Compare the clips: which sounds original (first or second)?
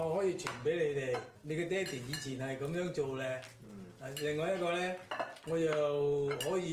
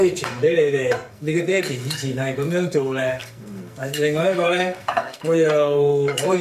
first